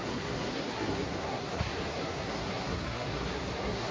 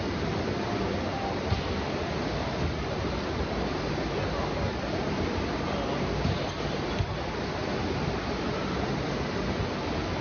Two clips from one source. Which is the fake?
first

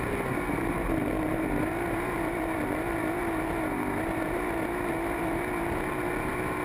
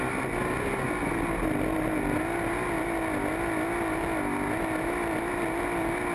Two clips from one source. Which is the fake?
first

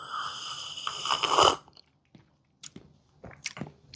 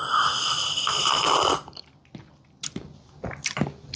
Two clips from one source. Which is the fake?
first